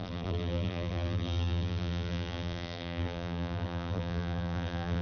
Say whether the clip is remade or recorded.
remade